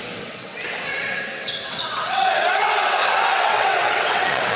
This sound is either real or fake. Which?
fake